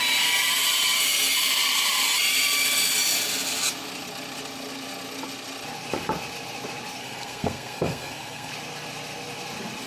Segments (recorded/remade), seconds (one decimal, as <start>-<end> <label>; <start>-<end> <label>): 0.0-7.0 recorded; 7.0-8.5 remade; 8.5-9.9 recorded

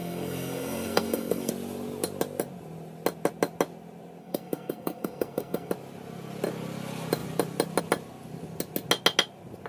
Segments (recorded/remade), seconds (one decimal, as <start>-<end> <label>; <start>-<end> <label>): 0.0-1.5 remade; 1.5-4.2 recorded; 4.2-5.7 remade; 5.7-9.7 recorded

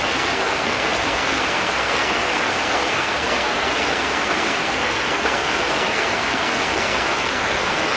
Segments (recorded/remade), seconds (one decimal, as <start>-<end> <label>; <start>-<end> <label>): 0.0-8.0 remade

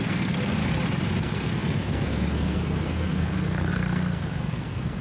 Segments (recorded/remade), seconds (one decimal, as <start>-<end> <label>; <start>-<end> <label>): 0.0-0.6 remade; 0.6-1.2 recorded; 1.2-5.0 remade

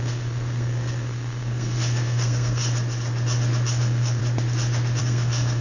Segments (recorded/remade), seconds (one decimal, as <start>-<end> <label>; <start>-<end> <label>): 0.0-2.6 remade; 2.6-3.7 recorded; 3.7-4.2 remade; 4.2-5.0 recorded; 5.0-5.6 remade

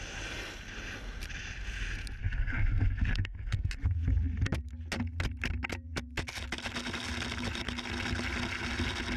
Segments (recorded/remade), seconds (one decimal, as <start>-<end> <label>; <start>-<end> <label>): 0.0-2.2 recorded; 2.2-3.7 remade; 3.7-9.2 recorded